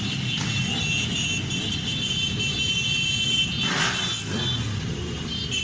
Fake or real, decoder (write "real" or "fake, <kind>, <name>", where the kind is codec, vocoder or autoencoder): real